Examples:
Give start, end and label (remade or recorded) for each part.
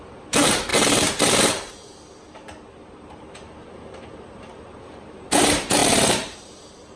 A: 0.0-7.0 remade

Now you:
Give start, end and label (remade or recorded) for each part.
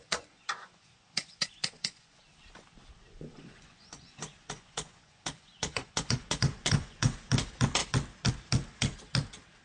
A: 0.0-2.2 remade; 2.2-3.1 recorded; 3.1-7.2 remade; 7.2-9.6 recorded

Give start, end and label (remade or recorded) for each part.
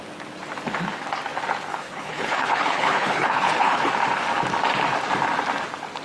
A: 0.0-1.7 recorded; 1.7-3.9 remade; 3.9-6.0 recorded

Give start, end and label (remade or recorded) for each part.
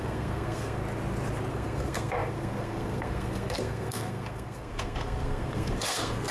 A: 0.0-0.8 remade; 0.8-1.5 recorded; 1.5-6.3 remade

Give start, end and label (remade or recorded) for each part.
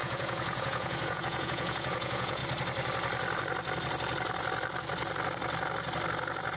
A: 0.0-2.4 remade; 2.4-6.6 recorded